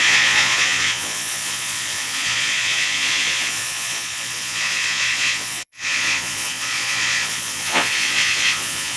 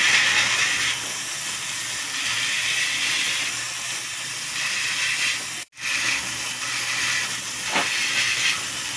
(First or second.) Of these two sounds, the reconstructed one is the first